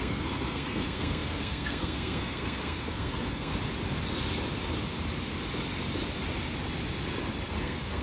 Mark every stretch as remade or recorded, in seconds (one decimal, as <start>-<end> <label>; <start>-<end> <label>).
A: 0.0-3.5 remade; 3.5-7.6 recorded; 7.6-8.0 remade